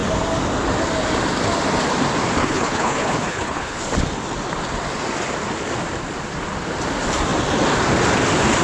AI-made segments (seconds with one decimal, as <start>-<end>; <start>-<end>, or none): 2.4-3.8